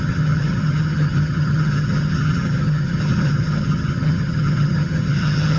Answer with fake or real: fake